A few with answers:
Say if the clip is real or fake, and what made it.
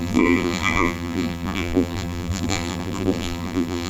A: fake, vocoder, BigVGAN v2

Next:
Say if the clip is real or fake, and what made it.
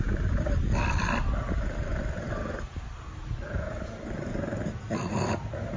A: fake, vocoder, BigVGAN v2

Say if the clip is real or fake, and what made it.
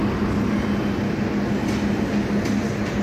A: real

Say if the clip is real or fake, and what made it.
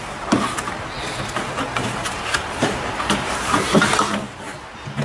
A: fake, vocoder, BigVGAN v2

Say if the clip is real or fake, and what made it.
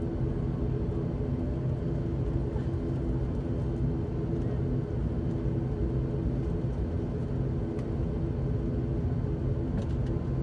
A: real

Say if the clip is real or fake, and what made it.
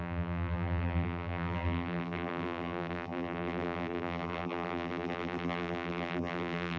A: fake, vocoder, BigVGAN v2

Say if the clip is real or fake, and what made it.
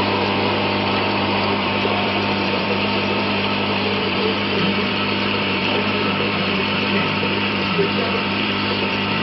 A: fake, vocoder, BigVGAN v2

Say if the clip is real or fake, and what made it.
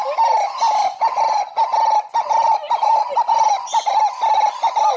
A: real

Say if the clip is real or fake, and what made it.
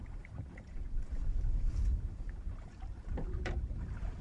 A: fake, vocoder, BigVGAN v2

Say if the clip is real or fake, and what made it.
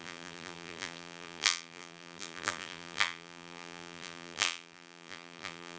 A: fake, vocoder, BigVGAN v2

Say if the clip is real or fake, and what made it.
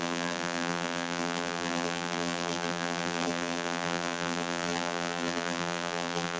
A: fake, vocoder, BigVGAN v2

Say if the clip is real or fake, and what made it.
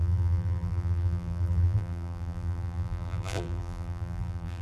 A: fake, vocoder, BigVGAN v2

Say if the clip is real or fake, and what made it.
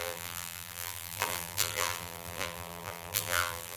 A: fake, vocoder, BigVGAN v2